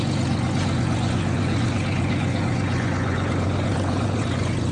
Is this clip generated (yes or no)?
yes